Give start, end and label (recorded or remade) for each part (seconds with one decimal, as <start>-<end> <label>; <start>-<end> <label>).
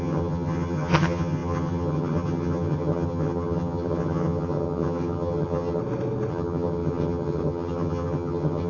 0.0-5.8 remade; 5.8-6.3 recorded; 6.3-8.7 remade